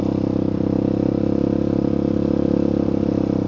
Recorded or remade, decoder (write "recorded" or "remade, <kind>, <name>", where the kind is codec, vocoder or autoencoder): recorded